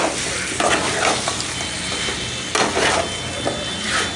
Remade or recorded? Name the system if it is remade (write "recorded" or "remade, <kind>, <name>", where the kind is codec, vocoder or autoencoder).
recorded